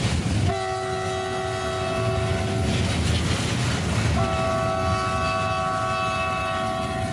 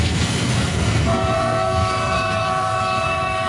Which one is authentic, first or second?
first